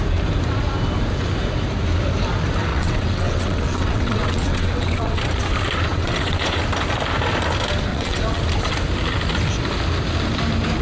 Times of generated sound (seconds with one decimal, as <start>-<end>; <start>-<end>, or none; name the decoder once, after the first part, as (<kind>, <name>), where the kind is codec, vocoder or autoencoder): 2.7-5.2 (vocoder, WaveNeXt); 5.9-6.6; 7.9-8.4

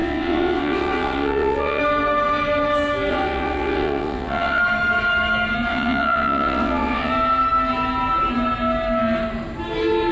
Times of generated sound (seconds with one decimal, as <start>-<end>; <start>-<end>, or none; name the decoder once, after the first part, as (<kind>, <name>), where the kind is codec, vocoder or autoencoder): 0.0-1.8 (vocoder, WaveNeXt); 3.1-4.6; 5.7-7.1

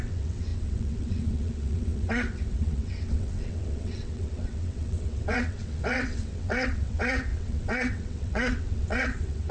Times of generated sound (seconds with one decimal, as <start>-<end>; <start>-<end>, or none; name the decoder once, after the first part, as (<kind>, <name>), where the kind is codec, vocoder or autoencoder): 0.0-9.5 (vocoder, WaveNeXt)

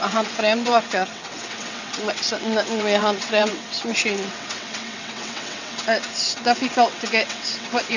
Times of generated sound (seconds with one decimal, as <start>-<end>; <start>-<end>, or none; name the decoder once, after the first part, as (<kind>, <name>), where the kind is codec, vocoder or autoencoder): 0.0-8.0 (vocoder, WaveNeXt)

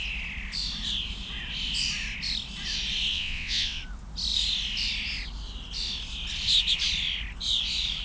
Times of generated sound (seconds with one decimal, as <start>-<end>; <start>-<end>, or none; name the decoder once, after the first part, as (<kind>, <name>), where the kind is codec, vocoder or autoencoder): 3.1-3.8 (vocoder, WaveNeXt)

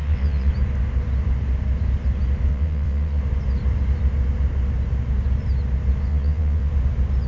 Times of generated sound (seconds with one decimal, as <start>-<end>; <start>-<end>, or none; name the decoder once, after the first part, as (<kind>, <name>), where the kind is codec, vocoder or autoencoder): 0.0-0.5 (vocoder, WaveNeXt); 2.5-3.2; 6.1-6.7